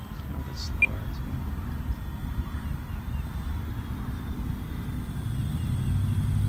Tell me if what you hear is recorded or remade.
recorded